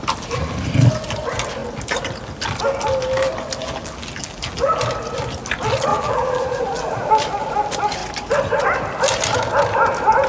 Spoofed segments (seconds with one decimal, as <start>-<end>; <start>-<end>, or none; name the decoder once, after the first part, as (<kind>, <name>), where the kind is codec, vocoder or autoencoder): 3.6-4.8 (vocoder, BigVGAN v2); 5.9-7.1